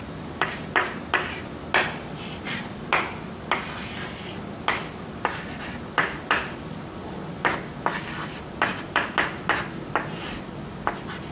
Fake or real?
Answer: real